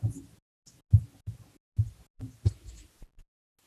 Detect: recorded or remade recorded